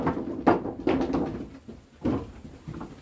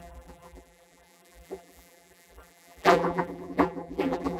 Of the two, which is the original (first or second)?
first